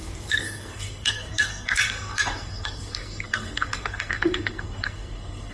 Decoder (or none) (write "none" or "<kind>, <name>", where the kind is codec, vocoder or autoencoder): codec, SNAC